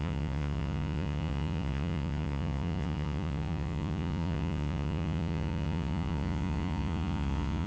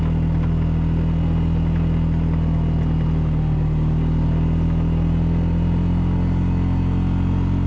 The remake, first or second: first